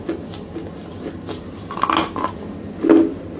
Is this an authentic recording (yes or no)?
yes